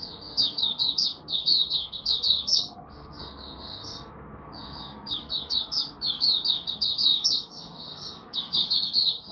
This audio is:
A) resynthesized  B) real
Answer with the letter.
A